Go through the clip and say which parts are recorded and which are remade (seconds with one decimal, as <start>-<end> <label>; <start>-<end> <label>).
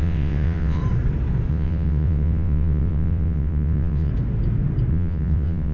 0.0-0.8 remade; 0.8-1.5 recorded; 1.5-4.1 remade; 4.1-4.9 recorded; 4.9-5.7 remade